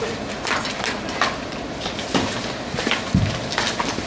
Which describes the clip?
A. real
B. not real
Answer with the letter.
A